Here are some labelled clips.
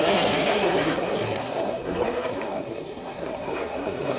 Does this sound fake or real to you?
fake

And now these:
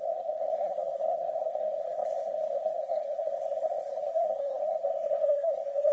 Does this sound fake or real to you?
fake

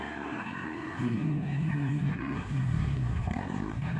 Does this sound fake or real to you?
fake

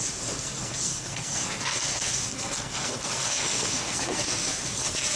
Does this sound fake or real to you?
fake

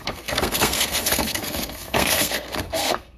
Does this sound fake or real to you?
fake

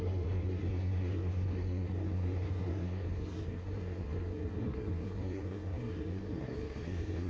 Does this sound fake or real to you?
fake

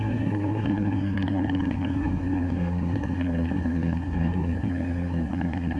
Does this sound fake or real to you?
fake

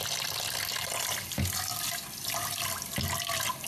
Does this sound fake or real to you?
real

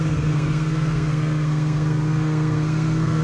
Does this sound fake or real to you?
fake